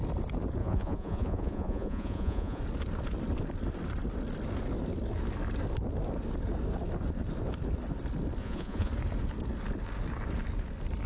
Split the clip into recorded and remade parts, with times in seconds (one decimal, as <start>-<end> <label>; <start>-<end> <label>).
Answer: 0.0-0.6 recorded; 0.6-2.6 remade; 2.6-8.4 recorded; 8.4-8.9 remade; 8.9-11.1 recorded